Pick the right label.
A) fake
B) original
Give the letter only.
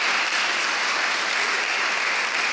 A